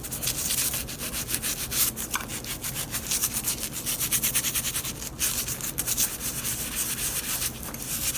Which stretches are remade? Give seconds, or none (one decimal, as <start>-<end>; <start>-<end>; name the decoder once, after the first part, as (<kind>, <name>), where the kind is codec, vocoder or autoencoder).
none